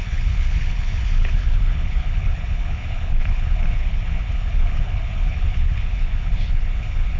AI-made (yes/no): yes